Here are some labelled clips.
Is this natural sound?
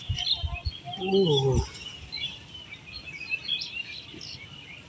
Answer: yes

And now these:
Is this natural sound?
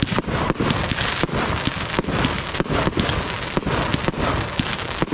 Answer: yes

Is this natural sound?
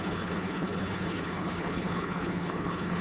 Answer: no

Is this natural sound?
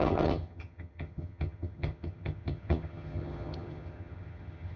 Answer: no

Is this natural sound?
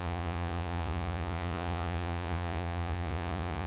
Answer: no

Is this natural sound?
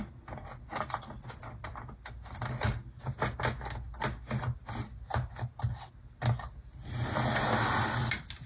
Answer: yes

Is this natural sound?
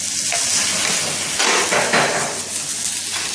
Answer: yes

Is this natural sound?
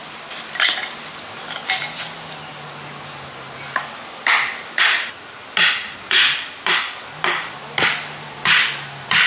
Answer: yes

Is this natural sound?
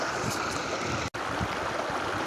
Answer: yes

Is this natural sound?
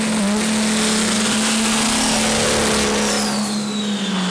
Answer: yes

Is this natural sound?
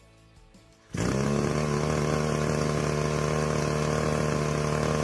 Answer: yes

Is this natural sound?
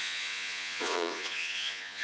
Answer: no